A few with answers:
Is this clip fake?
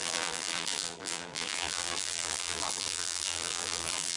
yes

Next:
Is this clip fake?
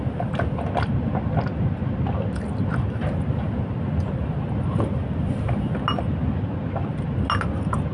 no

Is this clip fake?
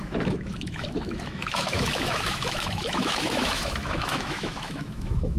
yes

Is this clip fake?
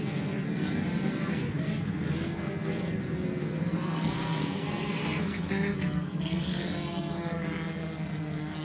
yes